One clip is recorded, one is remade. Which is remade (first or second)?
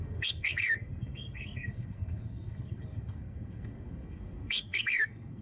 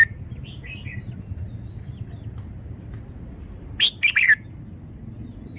first